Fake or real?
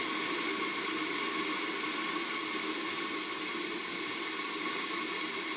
real